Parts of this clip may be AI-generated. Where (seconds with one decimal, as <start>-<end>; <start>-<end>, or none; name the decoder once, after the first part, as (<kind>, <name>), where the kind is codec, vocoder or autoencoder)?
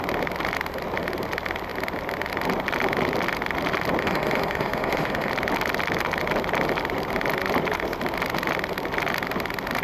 4.0-5.3 (autoencoder, DAC-VAE)